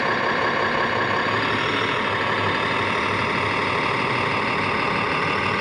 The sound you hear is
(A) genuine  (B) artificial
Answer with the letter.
A